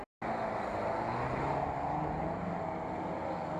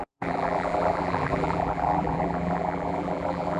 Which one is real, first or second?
first